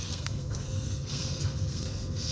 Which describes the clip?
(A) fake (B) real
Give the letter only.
A